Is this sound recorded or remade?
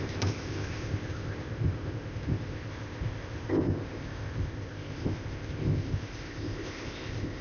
remade